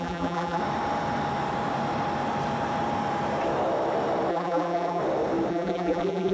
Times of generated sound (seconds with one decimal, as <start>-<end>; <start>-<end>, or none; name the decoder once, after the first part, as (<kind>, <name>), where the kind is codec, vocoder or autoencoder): 0.0-0.6 (vocoder, BigVGAN v2); 4.3-5.0; 5.5-6.3